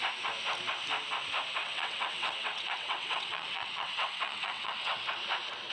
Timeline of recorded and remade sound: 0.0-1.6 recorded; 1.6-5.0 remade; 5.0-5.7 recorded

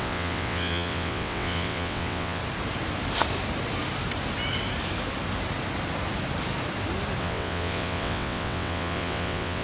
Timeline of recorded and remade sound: 0.0-2.4 remade; 2.4-7.2 recorded; 7.2-9.6 remade

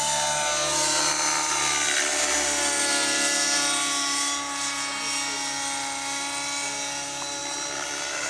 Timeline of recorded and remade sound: 0.0-8.3 recorded